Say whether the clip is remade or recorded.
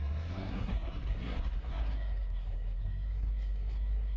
remade